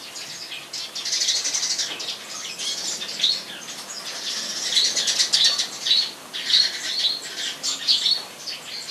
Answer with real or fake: real